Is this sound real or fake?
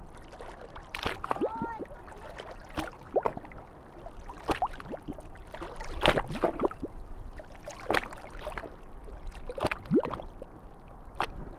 fake